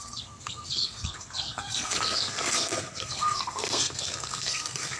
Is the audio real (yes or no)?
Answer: no